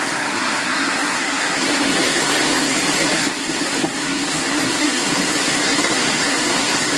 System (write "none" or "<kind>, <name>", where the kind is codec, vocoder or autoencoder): codec, SNAC